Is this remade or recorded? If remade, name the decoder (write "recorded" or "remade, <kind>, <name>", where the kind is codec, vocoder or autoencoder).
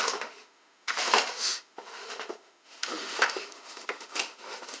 remade, autoencoder, DAC-VAE